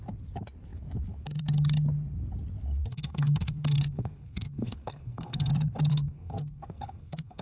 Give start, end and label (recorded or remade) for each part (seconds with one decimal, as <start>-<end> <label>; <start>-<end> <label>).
0.0-2.8 recorded; 2.8-5.5 remade; 5.5-5.9 recorded; 5.9-7.4 remade